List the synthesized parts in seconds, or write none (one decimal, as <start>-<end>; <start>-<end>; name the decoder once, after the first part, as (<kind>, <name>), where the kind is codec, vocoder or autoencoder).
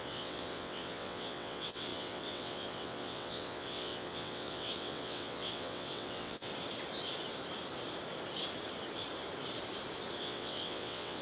0.0-6.5 (vocoder, WaveNeXt); 10.2-11.2